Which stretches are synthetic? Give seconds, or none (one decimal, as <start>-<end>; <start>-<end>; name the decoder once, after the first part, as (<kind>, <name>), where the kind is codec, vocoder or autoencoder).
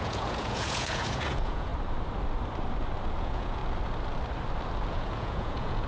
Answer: 0.0-1.7 (vocoder, Vocos); 3.2-3.6; 4.9-5.9